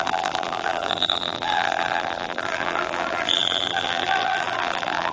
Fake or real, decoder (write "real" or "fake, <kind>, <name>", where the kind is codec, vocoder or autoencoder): fake, vocoder, BigVGAN v2